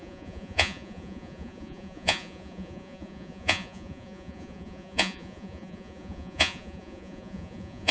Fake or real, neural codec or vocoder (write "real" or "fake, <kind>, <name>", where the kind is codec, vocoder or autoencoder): fake, vocoder, Vocos